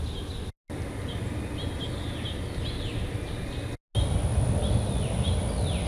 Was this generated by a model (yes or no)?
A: no